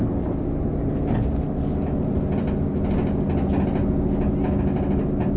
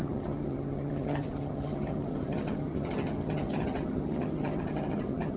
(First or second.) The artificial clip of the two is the second